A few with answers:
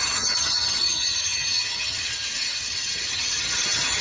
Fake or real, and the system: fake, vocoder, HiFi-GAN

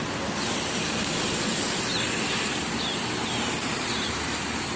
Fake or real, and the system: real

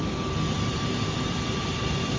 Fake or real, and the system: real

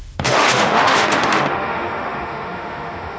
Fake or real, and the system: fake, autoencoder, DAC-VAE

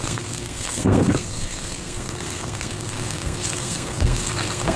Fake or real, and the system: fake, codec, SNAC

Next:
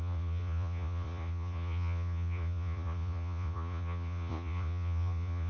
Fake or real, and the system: fake, vocoder, Vocos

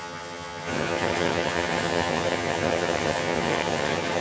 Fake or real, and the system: fake, vocoder, HiFi-GAN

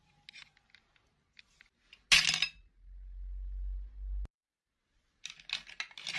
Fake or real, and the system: real